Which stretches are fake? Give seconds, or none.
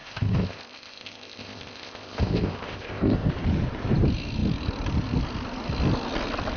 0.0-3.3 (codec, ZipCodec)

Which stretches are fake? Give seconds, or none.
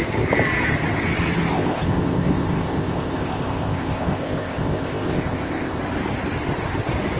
1.5-5.8 (codec, ZipCodec)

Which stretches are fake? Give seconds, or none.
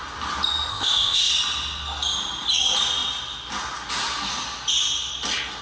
0.7-1.3 (codec, ZipCodec)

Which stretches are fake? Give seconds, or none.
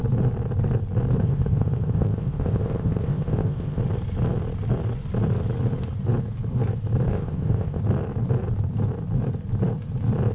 1.2-3.8 (codec, ZipCodec); 7.1-7.8